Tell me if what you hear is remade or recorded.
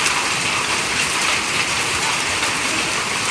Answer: remade